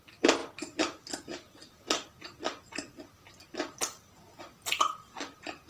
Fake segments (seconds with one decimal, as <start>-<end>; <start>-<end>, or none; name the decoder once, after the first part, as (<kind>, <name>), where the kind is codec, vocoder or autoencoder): none